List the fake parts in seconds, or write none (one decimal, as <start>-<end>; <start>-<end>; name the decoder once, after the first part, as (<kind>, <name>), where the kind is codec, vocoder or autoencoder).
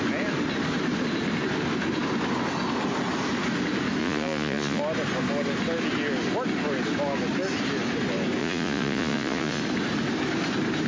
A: 4.0-4.8 (vocoder, Vocos); 8.4-9.6